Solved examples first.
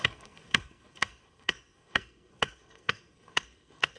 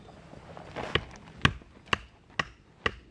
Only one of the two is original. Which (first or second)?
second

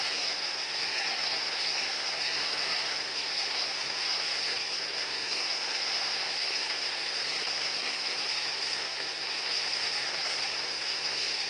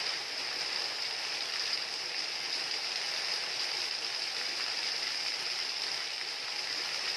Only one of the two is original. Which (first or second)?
second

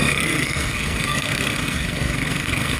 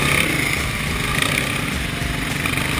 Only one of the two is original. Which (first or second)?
second